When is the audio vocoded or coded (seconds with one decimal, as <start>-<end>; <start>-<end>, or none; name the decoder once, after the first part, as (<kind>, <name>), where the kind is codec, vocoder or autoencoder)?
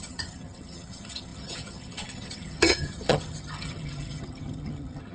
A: 0.0-5.1 (vocoder, HiFi-GAN)